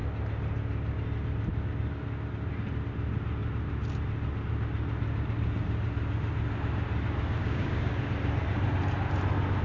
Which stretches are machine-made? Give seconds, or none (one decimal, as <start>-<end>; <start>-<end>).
7.4-7.9